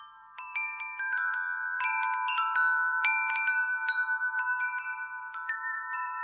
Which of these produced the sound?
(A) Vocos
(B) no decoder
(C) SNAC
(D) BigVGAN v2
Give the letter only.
D